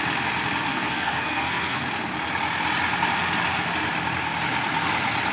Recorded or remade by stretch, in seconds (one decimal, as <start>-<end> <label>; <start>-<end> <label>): 0.0-0.7 recorded; 0.7-1.8 remade; 1.8-5.3 recorded